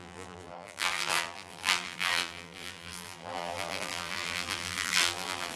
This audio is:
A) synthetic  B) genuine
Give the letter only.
A